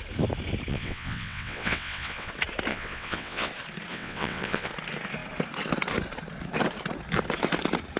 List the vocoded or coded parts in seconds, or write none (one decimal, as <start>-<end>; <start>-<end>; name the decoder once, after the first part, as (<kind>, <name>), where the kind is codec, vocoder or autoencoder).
0.7-2.3 (vocoder, WaveNeXt); 2.7-3.5; 3.9-4.7